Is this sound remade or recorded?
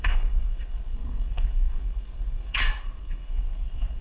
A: remade